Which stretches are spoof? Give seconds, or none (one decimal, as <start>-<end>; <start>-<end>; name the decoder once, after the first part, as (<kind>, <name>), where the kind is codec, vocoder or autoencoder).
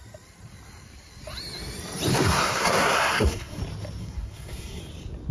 2.1-3.6 (codec, SNAC); 4.0-4.8